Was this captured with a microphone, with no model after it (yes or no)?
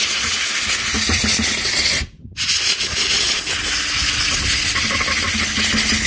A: yes